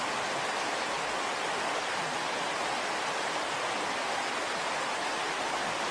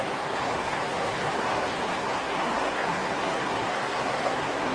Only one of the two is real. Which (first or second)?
first